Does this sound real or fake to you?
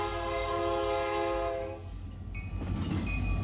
real